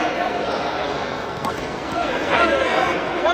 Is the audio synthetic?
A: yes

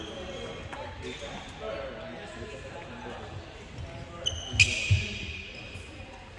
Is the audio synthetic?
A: no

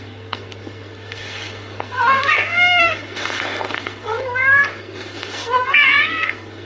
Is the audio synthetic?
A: yes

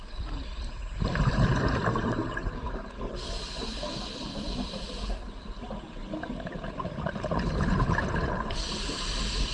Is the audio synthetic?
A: yes